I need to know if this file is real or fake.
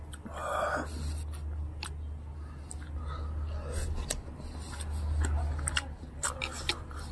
real